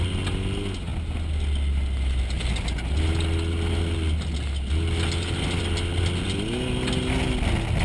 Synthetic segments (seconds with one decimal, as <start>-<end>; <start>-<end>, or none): none